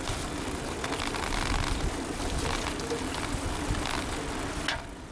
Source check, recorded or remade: recorded